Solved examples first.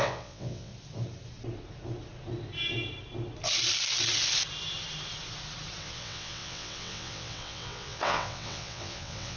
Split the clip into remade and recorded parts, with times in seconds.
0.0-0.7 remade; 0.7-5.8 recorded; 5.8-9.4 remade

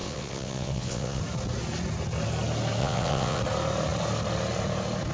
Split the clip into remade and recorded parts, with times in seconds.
0.0-1.2 remade; 1.2-2.8 recorded; 2.8-3.4 remade; 3.4-5.1 recorded

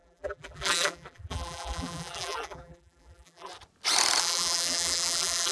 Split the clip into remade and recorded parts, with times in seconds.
0.0-3.5 remade; 3.5-4.2 recorded; 4.2-5.5 remade

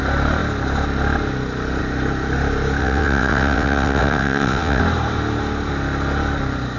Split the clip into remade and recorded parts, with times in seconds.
0.0-2.8 recorded; 2.8-4.8 remade; 4.8-6.8 recorded

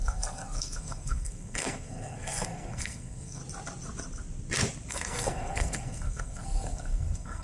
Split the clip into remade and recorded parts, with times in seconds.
0.0-3.4 remade; 3.4-4.9 recorded; 4.9-7.4 remade

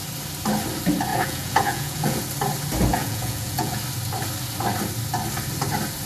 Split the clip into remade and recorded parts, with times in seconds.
0.0-1.1 recorded; 1.1-2.2 remade; 2.2-2.9 recorded; 2.9-3.8 remade; 3.8-6.1 recorded

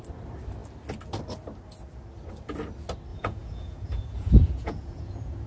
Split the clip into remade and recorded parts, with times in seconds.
0.0-3.1 recorded; 3.1-5.5 remade